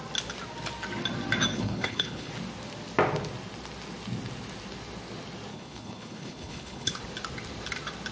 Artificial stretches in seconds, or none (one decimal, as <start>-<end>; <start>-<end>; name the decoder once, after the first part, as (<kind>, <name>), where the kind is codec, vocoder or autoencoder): 1.5-2.3 (codec, HILCodec); 5.5-7.0